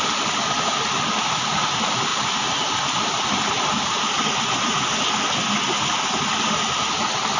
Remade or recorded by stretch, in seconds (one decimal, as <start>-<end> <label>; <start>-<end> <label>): 0.0-7.4 recorded